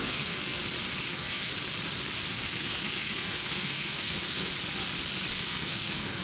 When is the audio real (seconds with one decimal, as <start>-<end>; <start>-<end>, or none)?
0.6-1.1; 1.5-2.3; 4.5-5.3